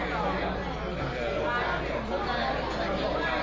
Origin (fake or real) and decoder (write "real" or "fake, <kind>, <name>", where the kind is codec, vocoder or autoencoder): real